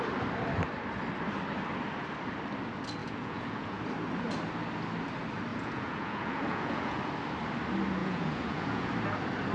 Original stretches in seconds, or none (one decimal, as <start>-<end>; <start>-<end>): 0.0-3.0; 3.8-5.5; 7.0-8.0; 8.9-9.5